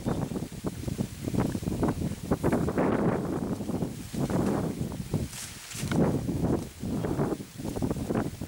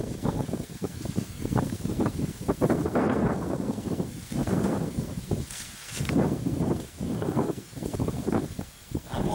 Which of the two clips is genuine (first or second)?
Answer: first